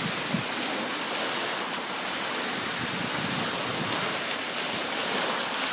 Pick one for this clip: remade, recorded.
recorded